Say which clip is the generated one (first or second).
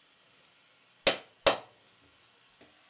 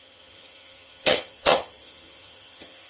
second